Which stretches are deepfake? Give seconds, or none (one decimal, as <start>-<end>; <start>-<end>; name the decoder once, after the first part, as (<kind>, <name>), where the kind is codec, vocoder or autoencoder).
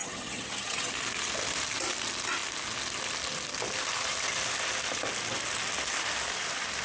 0.0-0.9 (vocoder, HiFi-GAN)